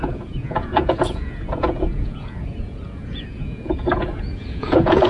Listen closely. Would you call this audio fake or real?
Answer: fake